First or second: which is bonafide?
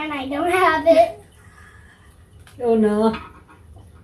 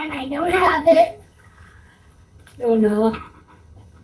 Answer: first